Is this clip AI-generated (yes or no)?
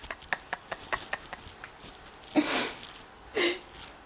no